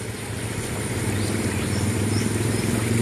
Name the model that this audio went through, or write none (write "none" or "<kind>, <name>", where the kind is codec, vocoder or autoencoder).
none